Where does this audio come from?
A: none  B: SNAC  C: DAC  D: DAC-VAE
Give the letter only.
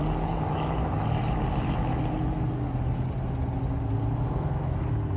A